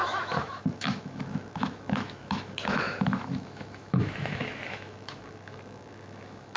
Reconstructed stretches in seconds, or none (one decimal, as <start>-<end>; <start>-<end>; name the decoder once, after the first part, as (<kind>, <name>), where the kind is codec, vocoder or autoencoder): 0.0-6.6 (autoencoder, DAC-VAE)